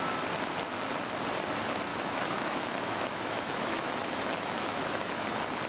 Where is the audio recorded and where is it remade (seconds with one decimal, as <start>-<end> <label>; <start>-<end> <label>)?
0.0-1.9 recorded; 1.9-5.3 remade; 5.3-5.7 recorded